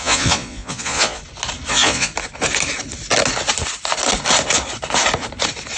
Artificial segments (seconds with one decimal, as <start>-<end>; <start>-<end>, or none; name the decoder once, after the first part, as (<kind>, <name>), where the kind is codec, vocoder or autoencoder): 0.0-1.2 (vocoder, Vocos); 1.7-2.1